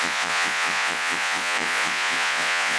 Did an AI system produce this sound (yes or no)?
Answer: yes